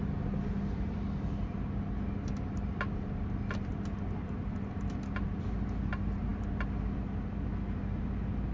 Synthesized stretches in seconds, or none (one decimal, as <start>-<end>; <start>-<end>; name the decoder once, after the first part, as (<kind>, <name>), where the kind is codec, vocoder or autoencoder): none